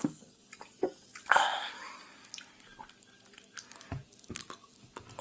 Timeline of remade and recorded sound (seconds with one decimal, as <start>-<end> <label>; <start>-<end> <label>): 0.0-5.2 recorded

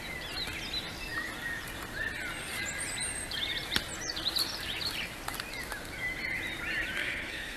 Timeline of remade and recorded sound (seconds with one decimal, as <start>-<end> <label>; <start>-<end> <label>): 0.0-7.0 recorded; 7.0-7.6 remade

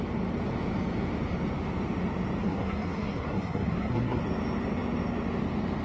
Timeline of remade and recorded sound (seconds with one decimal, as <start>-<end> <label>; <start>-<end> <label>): 0.0-2.4 recorded; 2.4-4.2 remade; 4.2-5.8 recorded

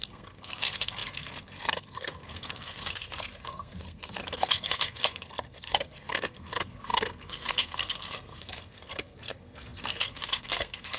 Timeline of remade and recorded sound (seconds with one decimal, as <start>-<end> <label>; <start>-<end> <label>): 0.0-11.0 remade